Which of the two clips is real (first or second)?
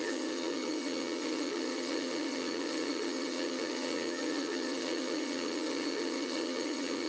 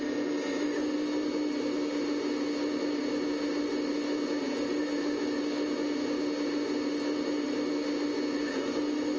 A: second